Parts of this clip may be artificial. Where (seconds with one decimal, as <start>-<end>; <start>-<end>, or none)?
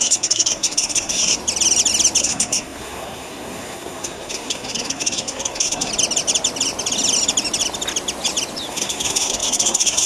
0.0-1.4; 2.2-5.9; 8.7-10.1